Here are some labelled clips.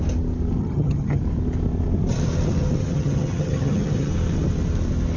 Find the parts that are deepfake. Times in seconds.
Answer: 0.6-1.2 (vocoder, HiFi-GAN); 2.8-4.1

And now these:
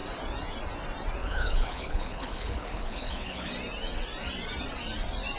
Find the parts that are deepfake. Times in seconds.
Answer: 1.2-3.5 (codec, HILCodec)